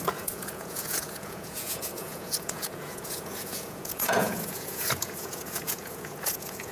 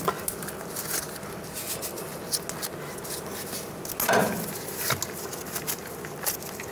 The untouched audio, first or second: second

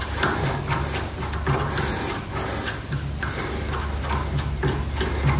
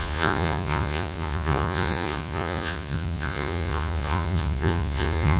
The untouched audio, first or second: first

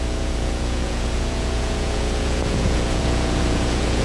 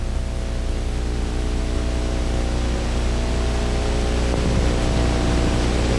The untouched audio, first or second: second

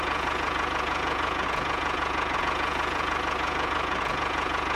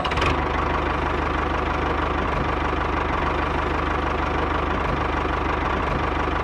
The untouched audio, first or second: second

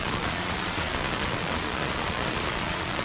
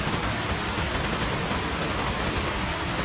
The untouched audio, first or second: second